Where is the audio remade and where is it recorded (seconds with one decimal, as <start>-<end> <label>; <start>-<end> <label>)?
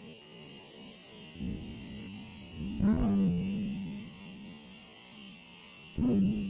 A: 0.0-6.5 recorded